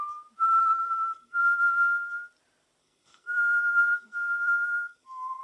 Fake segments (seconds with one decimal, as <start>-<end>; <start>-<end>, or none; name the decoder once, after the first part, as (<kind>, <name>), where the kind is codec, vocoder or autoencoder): 0.6-1.4 (codec, SNAC); 2.8-5.4